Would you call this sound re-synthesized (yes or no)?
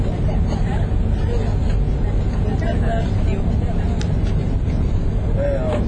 no